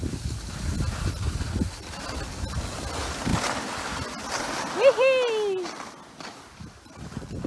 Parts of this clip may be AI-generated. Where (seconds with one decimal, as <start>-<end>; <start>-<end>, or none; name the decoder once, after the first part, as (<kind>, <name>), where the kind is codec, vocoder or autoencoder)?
none